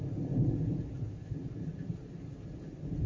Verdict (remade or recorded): recorded